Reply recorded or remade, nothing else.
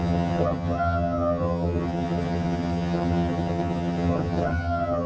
remade